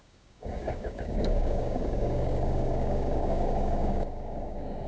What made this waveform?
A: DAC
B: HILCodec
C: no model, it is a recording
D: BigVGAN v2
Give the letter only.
A